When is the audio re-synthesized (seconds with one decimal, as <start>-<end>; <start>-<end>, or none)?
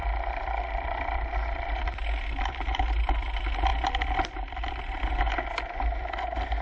none